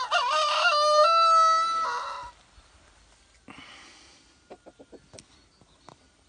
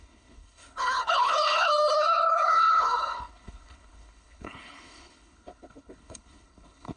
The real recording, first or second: first